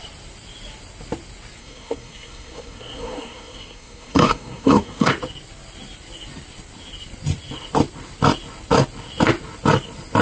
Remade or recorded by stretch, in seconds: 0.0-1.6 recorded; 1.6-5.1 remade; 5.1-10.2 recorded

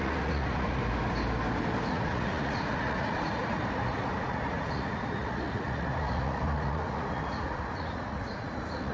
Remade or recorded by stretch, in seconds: 0.0-0.8 remade; 0.8-1.9 recorded; 1.9-8.9 remade

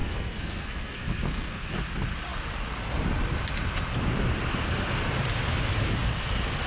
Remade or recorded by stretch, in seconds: 0.0-1.8 remade; 1.8-6.7 recorded

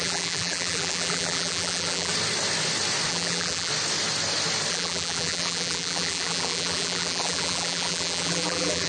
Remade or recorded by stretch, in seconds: 0.0-2.1 remade; 2.1-3.1 recorded; 3.1-3.7 remade; 3.7-4.7 recorded; 4.7-8.9 remade

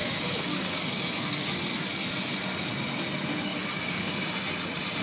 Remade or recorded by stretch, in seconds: 0.0-1.6 remade; 1.6-3.5 recorded; 3.5-4.1 remade; 4.1-5.0 recorded

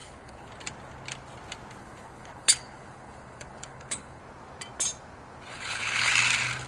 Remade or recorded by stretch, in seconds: 0.0-0.5 remade; 0.5-1.8 recorded; 1.8-4.2 remade; 4.2-5.5 recorded; 5.5-6.1 remade; 6.1-6.7 recorded

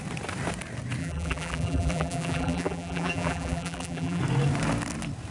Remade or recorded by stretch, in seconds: 0.0-1.0 recorded; 1.0-4.2 remade; 4.2-5.3 recorded

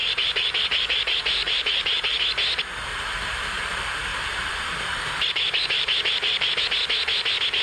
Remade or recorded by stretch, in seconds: 0.0-2.2 remade; 2.2-2.9 recorded; 2.9-3.6 remade; 3.6-4.1 recorded; 4.1-6.6 remade; 6.6-7.6 recorded